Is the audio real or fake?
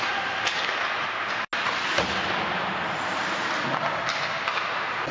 real